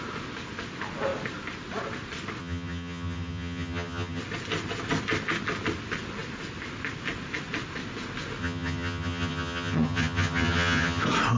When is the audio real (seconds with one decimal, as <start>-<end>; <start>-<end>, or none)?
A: 0.0-2.4; 4.2-8.4; 11.0-11.4